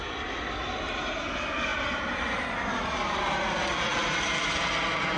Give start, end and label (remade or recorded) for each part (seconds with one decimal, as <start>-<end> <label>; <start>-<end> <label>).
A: 0.0-5.2 recorded